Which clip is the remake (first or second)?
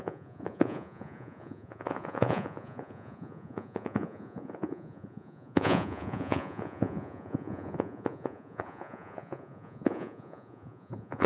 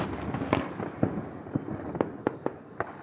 first